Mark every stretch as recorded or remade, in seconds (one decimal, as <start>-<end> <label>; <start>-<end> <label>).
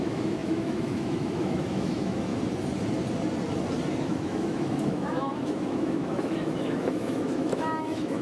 0.0-2.3 remade; 2.3-4.0 recorded; 4.0-8.2 remade